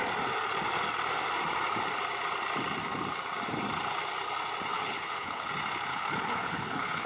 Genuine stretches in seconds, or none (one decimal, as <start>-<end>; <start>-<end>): 0.0-4.7; 5.5-5.9